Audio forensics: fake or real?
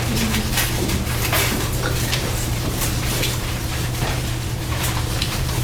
fake